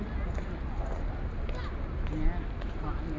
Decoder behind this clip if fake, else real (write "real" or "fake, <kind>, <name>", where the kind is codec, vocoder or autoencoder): real